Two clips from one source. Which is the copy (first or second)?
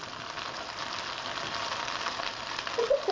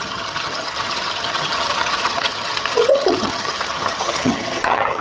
second